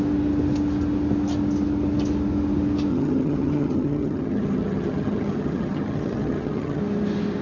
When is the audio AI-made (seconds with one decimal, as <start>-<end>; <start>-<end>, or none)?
2.9-6.8